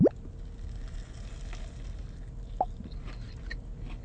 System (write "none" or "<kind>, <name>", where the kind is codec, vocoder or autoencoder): none